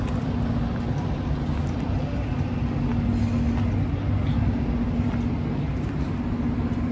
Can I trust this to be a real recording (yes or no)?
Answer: yes